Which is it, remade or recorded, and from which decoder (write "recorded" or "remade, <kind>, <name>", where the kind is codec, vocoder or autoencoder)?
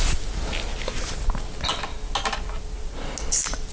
recorded